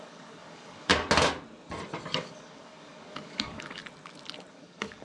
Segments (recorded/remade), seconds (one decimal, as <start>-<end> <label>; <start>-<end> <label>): 0.0-0.9 remade; 0.9-2.2 recorded; 2.2-3.8 remade; 3.8-4.5 recorded; 4.5-5.0 remade